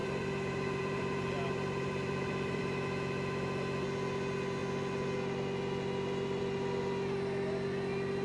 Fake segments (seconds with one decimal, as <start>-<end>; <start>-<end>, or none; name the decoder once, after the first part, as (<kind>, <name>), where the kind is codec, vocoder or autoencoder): 0.0-2.6 (vocoder, BigVGAN v2)